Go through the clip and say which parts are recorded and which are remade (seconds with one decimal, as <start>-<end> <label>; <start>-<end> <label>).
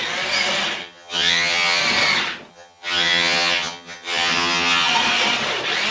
0.0-0.8 recorded; 0.8-1.8 remade; 1.8-2.5 recorded; 2.5-4.9 remade; 4.9-5.9 recorded